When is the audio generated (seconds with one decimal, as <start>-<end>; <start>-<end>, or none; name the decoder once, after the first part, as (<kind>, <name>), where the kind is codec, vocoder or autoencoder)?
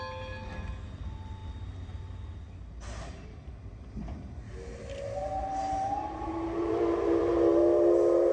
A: 6.6-7.3 (vocoder, BigVGAN v2)